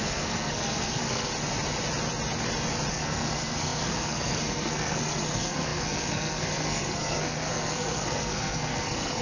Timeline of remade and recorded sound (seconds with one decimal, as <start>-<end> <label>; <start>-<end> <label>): 0.0-1.3 remade; 1.3-2.9 recorded; 2.9-9.2 remade